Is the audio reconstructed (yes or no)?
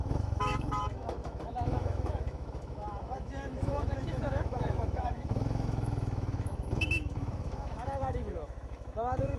yes